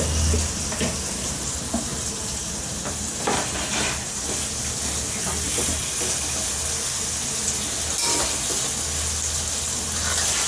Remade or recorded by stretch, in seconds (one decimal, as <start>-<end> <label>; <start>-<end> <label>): 0.0-1.9 recorded; 1.9-4.3 remade; 4.3-10.5 recorded